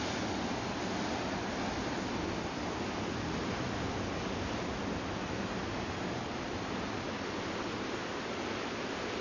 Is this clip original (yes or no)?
yes